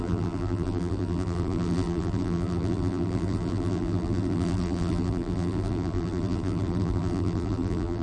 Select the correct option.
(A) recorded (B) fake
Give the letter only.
B